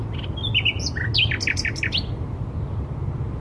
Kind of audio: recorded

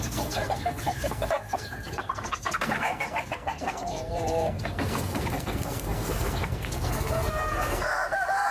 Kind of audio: remade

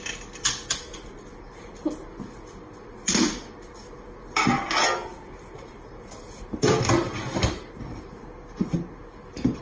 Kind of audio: recorded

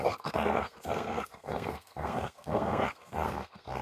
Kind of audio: remade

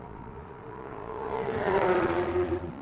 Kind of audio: remade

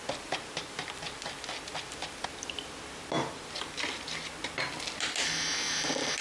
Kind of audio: recorded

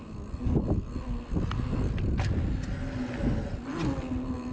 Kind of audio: recorded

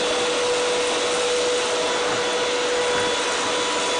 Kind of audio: recorded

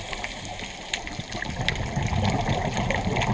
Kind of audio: recorded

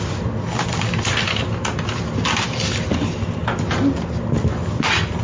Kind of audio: recorded